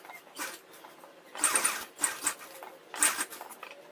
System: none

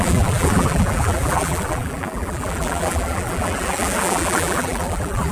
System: vocoder, BigVGAN v2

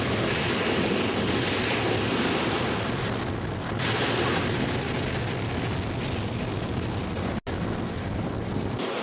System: none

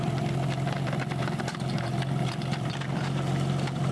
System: vocoder, BigVGAN v2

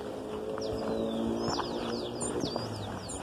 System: none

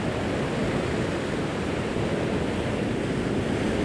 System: none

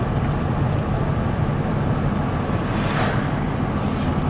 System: none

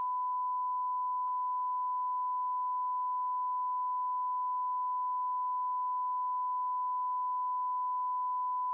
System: none